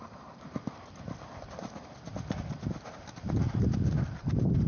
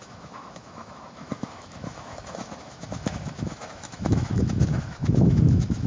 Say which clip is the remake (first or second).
second